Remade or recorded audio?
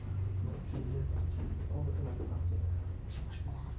recorded